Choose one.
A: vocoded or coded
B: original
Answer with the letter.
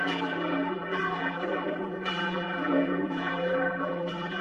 A